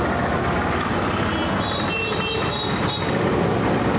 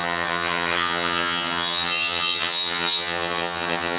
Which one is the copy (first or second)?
second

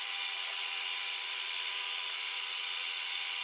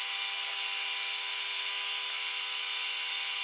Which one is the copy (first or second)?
first